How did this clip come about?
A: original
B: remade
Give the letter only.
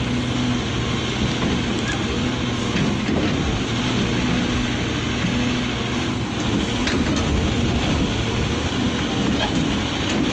A